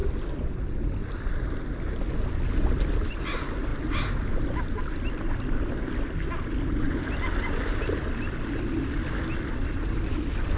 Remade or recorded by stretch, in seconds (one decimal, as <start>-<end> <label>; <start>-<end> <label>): 0.0-10.6 recorded